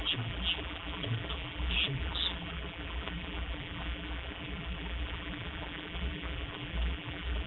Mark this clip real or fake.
fake